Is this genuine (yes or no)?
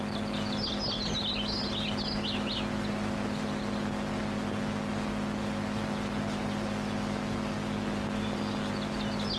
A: yes